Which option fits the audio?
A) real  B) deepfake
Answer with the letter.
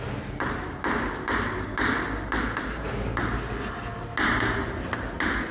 A